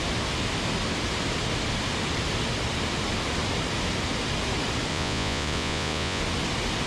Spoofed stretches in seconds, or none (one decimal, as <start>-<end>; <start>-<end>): 4.9-6.2